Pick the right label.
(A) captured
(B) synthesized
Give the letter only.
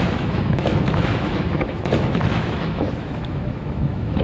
B